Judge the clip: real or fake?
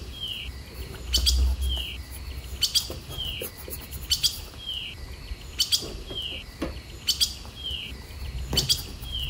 real